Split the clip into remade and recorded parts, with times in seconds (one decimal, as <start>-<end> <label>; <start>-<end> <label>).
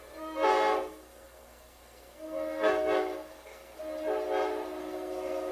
0.0-0.5 recorded; 0.5-3.8 remade; 3.8-4.8 recorded; 4.8-5.5 remade